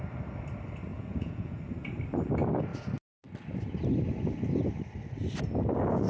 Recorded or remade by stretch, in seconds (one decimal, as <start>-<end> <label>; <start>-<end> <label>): 0.0-0.9 recorded; 0.9-1.6 remade; 1.6-6.1 recorded